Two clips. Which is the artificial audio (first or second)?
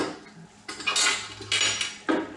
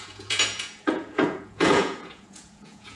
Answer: second